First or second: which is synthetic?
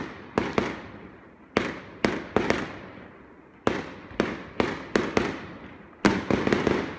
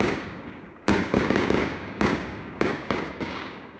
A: second